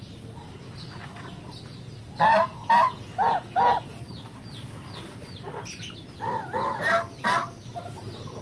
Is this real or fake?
real